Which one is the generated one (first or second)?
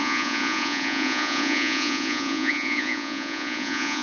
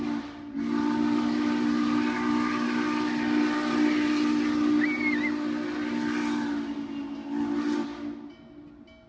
first